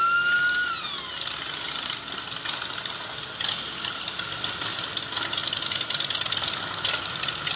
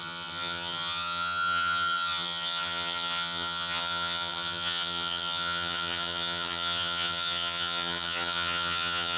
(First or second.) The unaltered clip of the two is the first